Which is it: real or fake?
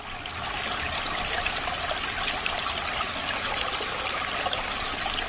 real